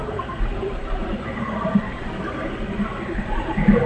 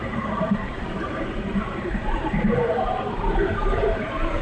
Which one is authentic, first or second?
first